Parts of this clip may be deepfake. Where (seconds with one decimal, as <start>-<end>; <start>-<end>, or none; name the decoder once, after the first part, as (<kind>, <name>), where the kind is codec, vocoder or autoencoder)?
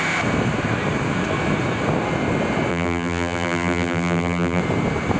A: 2.7-4.6 (vocoder, BigVGAN v2)